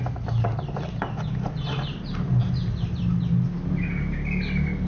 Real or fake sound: real